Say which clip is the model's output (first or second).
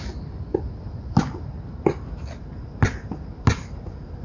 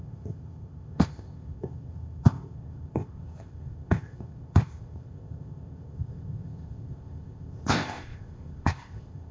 second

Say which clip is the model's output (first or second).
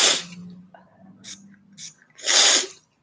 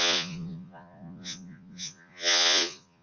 second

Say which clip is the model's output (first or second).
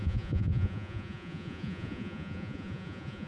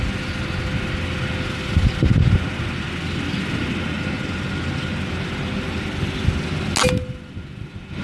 first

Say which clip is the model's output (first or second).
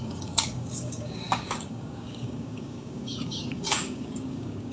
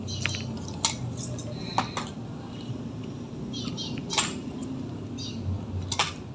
first